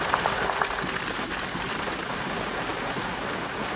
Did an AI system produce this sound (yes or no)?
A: no